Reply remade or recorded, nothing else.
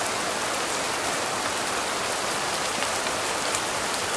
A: recorded